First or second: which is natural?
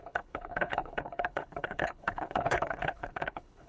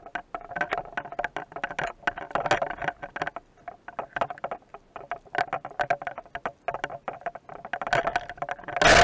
second